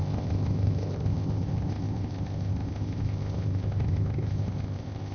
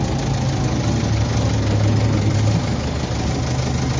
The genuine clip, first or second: second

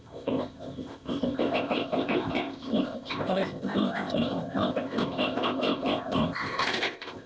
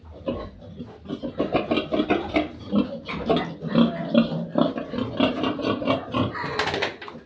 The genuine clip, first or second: second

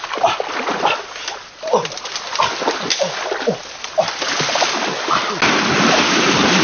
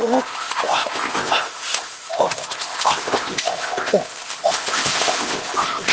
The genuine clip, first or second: first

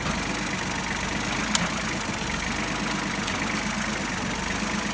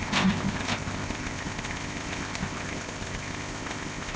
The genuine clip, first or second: first